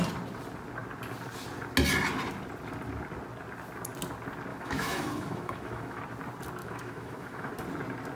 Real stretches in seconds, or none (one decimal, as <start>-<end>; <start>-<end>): 0.0-4.5; 6.0-6.6; 7.5-8.1